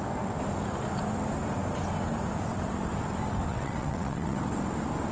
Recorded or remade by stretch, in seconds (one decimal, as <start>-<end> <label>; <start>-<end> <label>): 0.0-3.5 recorded; 3.5-4.4 remade; 4.4-5.1 recorded

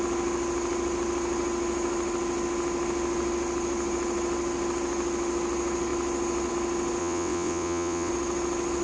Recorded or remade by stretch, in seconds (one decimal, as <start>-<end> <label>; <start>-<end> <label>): 0.0-7.0 recorded; 7.0-8.1 remade; 8.1-8.8 recorded

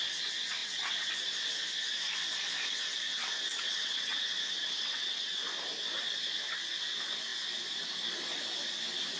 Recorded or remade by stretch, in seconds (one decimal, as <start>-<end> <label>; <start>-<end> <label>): 0.0-0.6 recorded; 0.6-1.1 remade; 1.1-3.5 recorded; 3.5-5.4 remade; 5.4-9.2 recorded